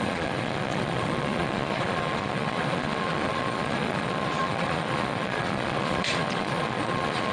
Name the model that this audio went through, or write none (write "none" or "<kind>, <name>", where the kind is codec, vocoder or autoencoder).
vocoder, Vocos